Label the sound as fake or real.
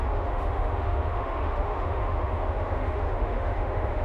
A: fake